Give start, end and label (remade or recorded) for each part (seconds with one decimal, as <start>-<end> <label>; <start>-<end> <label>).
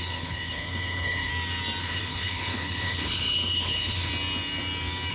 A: 0.0-1.3 remade; 1.3-1.8 recorded; 1.8-4.1 remade; 4.1-5.1 recorded